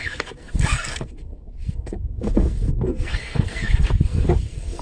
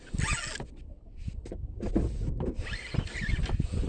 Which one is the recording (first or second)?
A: second